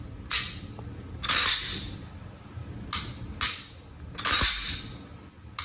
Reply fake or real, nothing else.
real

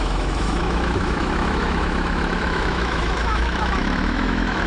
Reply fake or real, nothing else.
fake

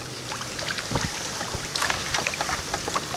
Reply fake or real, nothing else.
real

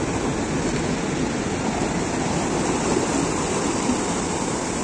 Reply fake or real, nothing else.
real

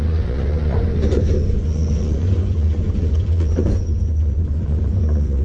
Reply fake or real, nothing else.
fake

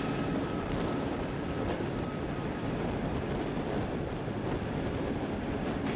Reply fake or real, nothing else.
real